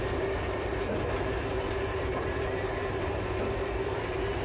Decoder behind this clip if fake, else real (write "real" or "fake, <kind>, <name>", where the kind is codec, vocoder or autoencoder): fake, vocoder, BigVGAN v2